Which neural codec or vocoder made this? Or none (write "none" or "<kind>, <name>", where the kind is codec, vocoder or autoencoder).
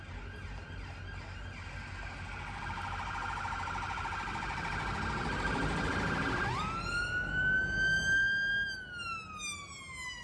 none